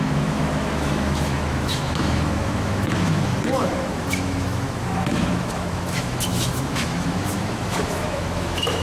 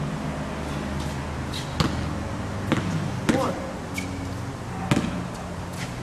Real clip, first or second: second